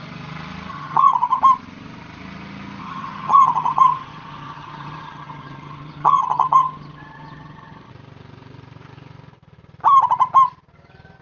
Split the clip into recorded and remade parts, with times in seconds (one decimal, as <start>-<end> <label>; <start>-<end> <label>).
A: 0.0-0.7 recorded; 0.7-1.4 remade; 1.4-2.8 recorded; 2.8-7.9 remade; 7.9-11.2 recorded